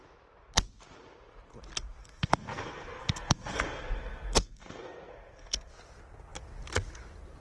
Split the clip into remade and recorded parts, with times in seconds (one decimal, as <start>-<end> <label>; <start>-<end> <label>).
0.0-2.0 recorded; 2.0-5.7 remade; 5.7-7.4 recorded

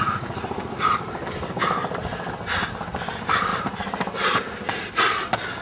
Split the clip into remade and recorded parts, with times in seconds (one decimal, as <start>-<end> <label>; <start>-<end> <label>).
0.0-5.6 recorded

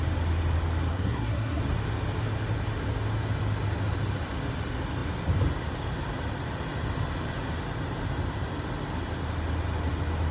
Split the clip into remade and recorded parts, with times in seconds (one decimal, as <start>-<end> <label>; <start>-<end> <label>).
0.0-0.9 recorded; 0.9-1.6 remade; 1.6-10.3 recorded

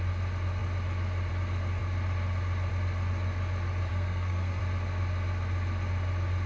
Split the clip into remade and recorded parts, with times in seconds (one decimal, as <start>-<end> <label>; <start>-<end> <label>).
0.0-3.9 recorded; 3.9-4.6 remade; 4.6-6.5 recorded

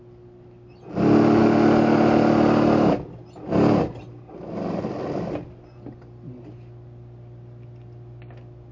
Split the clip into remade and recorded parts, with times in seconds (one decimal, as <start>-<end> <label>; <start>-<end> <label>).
0.0-8.7 recorded

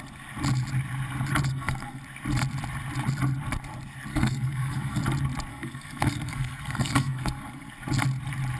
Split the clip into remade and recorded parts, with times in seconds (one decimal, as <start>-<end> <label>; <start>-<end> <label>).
0.0-1.5 recorded; 1.5-2.0 remade; 2.0-4.1 recorded; 4.1-5.0 remade; 5.0-5.5 recorded; 5.5-7.7 remade; 7.7-8.6 recorded

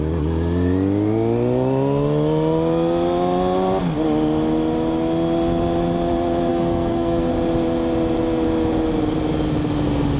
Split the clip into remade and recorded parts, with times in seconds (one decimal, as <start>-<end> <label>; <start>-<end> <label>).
0.0-6.5 recorded; 6.5-7.3 remade; 7.3-10.2 recorded

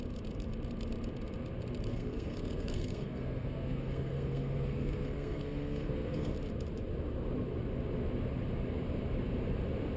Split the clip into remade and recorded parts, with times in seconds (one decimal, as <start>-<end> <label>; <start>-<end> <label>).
0.0-1.9 recorded; 1.9-6.3 remade; 6.3-10.0 recorded